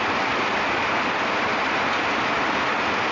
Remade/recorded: recorded